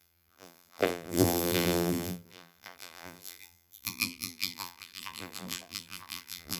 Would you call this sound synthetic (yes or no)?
yes